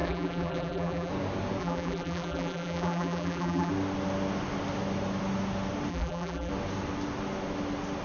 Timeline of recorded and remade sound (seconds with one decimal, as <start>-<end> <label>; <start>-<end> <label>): 0.0-1.1 remade; 1.1-1.6 recorded; 1.6-3.7 remade; 3.7-5.9 recorded; 5.9-6.5 remade; 6.5-8.0 recorded